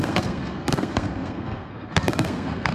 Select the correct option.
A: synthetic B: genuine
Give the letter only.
A